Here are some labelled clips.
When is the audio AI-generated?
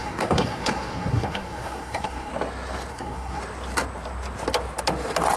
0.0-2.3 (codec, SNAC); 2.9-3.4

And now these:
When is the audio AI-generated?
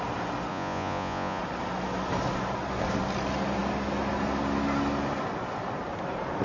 0.5-1.4 (vocoder, Vocos)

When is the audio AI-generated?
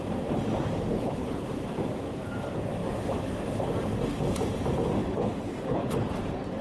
0.9-1.5 (codec, HILCodec); 5.0-6.1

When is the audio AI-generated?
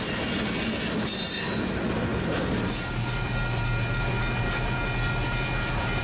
none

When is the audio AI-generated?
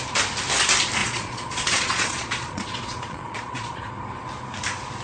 1.0-3.9 (vocoder, Vocos)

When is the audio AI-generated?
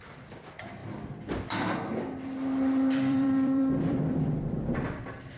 0.0-0.8 (vocoder, BigVGAN v2); 1.9-5.4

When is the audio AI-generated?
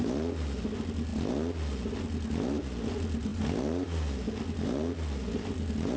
none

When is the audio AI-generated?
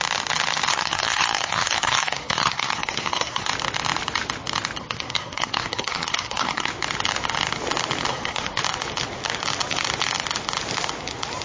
0.7-3.5 (codec, SNAC); 4.8-6.7; 8.1-8.6